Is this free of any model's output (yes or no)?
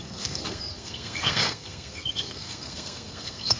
no